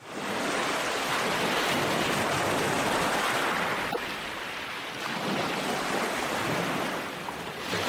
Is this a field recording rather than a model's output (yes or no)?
yes